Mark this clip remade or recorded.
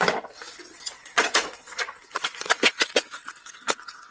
remade